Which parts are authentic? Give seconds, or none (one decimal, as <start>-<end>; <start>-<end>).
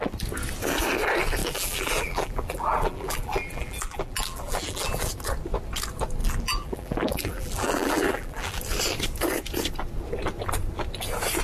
0.0-1.4; 5.1-6.2; 8.6-11.4